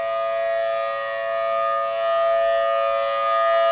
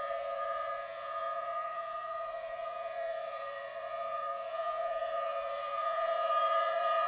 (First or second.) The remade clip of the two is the second